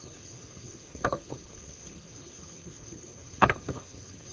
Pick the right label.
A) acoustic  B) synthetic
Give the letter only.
B